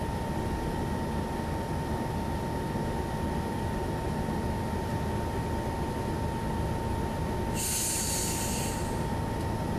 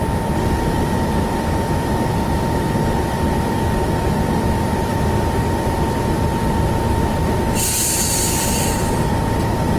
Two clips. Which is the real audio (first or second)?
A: first